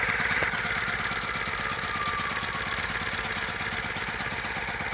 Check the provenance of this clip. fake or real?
real